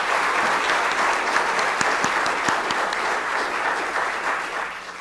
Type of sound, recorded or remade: recorded